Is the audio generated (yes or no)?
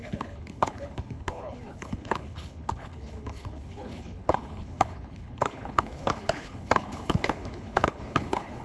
yes